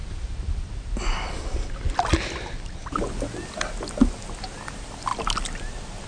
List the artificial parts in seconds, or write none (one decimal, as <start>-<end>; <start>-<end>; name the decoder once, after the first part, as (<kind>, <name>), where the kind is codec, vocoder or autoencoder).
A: none